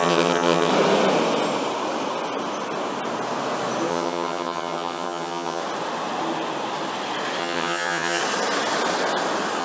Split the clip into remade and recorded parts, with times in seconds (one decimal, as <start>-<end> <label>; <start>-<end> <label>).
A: 0.0-0.7 remade; 0.7-3.9 recorded; 3.9-5.6 remade; 5.6-7.4 recorded; 7.4-8.2 remade; 8.2-9.6 recorded